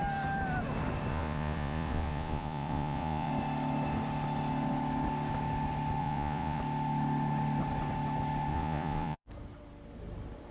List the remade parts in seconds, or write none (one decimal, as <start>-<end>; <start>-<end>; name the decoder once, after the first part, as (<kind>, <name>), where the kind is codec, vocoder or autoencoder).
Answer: 1.1-3.3 (vocoder, Vocos); 6.0-6.6; 8.5-9.3